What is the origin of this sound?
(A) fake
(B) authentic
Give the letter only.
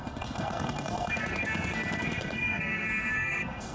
A